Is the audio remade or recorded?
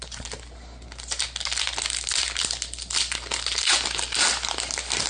recorded